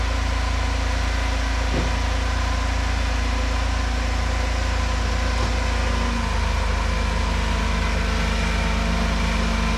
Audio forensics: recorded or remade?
recorded